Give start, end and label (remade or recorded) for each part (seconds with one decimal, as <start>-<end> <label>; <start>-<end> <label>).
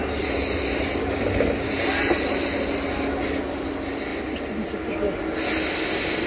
0.0-6.3 recorded